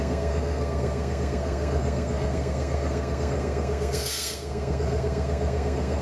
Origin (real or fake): fake